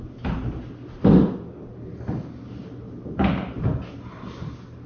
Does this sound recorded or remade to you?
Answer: recorded